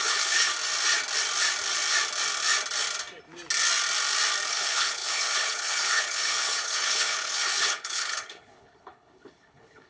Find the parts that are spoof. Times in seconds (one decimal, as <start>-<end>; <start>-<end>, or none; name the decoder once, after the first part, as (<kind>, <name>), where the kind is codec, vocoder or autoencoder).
0.0-0.5 (codec, HILCodec); 4.5-9.9